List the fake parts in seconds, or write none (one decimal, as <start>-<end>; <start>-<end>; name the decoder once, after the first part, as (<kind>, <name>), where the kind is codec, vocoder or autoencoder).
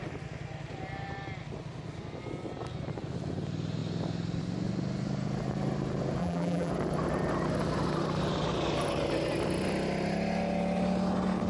6.2-6.7 (vocoder, BigVGAN v2)